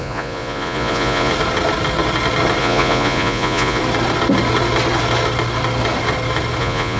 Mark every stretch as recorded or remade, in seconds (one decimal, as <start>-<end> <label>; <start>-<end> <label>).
0.0-1.3 remade; 1.3-2.6 recorded; 2.6-3.8 remade; 3.8-6.6 recorded; 6.6-7.0 remade